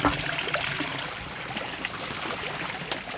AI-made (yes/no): no